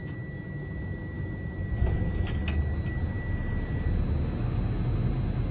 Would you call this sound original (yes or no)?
yes